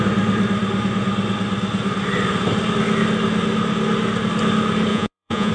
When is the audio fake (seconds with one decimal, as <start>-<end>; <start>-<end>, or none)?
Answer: 4.9-5.5